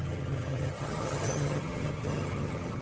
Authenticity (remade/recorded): remade